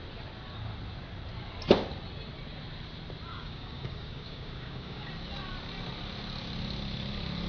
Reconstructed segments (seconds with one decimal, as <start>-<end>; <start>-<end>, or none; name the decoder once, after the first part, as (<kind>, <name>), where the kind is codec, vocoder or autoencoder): 3.3-5.1 (codec, DAC)